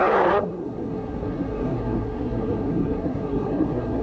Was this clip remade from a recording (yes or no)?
yes